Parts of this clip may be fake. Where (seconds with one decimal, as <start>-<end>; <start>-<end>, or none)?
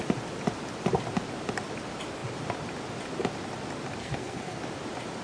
4.0-4.6